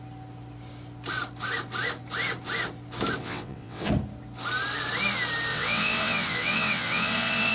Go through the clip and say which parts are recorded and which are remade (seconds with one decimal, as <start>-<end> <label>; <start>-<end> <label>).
0.0-3.2 recorded; 3.2-3.9 remade; 3.9-5.5 recorded; 5.5-7.5 remade